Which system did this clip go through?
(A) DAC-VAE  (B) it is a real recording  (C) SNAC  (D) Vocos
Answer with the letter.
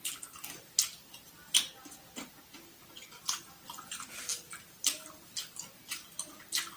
B